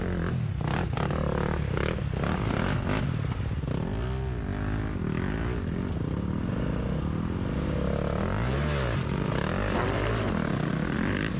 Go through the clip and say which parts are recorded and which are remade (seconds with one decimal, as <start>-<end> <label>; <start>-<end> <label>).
0.0-11.4 recorded